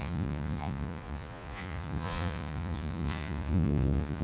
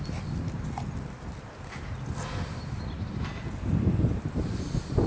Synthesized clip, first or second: first